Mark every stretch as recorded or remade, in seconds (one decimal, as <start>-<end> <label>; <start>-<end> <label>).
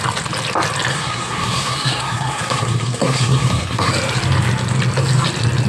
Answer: 0.0-0.9 recorded; 0.9-3.9 remade; 3.9-5.7 recorded